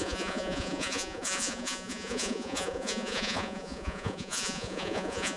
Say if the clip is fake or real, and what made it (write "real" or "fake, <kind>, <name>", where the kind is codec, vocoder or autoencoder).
fake, vocoder, Vocos